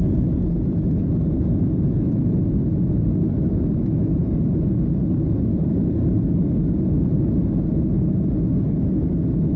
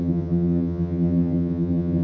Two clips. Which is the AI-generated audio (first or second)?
second